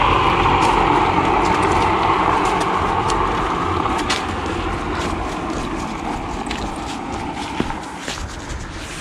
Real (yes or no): yes